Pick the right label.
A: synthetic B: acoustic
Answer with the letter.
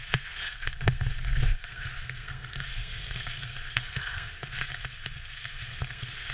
A